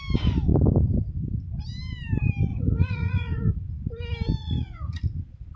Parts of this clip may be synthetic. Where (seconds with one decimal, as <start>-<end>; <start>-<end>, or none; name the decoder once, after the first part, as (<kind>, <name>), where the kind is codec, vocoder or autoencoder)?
2.5-3.5 (vocoder, Vocos); 4.4-5.0